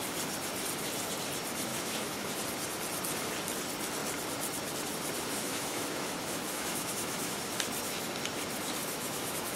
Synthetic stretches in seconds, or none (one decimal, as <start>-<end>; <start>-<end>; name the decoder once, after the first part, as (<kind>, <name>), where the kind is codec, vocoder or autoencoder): 1.7-2.3 (autoencoder, DAC-VAE); 5.3-7.4; 8.8-9.6